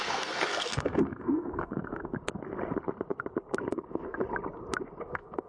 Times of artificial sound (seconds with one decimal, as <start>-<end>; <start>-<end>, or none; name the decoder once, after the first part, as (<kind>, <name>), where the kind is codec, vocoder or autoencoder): 0.0-2.1 (codec, SNAC); 3.7-4.2; 5.0-5.5